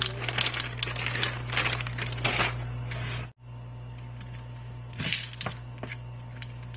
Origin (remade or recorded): recorded